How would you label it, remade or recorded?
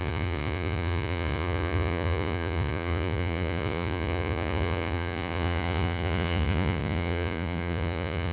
remade